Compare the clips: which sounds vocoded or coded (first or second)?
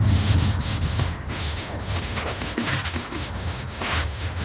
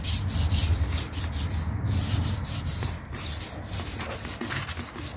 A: first